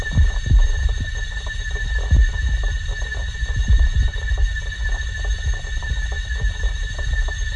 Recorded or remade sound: remade